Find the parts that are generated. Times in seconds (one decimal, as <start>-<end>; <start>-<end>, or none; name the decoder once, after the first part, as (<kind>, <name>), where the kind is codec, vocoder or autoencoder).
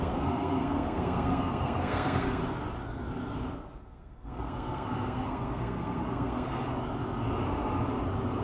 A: 0.0-2.4 (codec, SNAC); 3.8-6.6